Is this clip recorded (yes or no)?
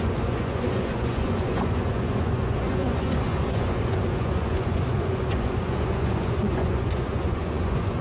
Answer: no